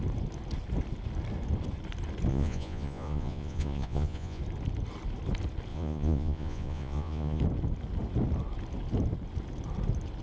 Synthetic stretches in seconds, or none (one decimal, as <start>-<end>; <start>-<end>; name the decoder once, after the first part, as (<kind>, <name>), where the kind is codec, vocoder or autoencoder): 2.3-4.4 (vocoder, Vocos); 5.7-7.4